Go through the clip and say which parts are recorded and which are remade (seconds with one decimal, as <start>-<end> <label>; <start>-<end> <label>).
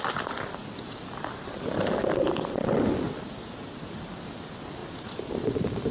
0.0-5.9 recorded